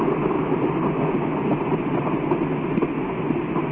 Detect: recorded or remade recorded